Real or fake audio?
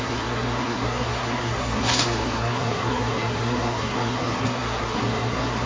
fake